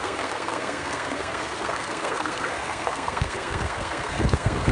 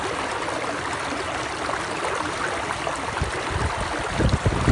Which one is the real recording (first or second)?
second